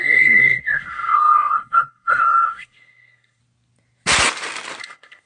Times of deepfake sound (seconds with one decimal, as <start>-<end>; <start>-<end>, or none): 0.0-3.4; 4.8-5.3